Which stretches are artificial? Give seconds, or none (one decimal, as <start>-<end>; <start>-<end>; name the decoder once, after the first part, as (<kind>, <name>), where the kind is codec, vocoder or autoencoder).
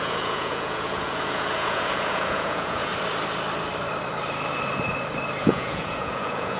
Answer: 0.0-2.9 (vocoder, Vocos); 5.4-6.6